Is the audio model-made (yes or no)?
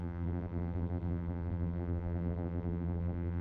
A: yes